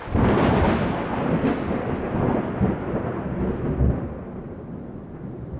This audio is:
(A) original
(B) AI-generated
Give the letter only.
A